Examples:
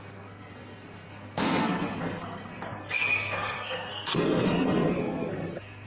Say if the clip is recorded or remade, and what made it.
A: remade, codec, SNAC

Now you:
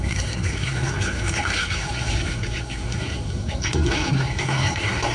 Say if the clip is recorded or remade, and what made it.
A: remade, codec, SNAC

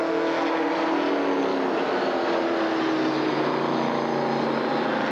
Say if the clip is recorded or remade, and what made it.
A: recorded